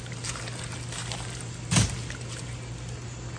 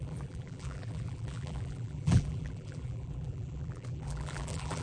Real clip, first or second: first